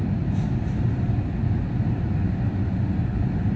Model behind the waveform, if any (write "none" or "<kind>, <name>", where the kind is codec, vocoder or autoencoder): none